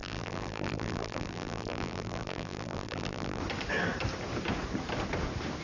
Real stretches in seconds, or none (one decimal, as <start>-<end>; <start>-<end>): 3.4-5.6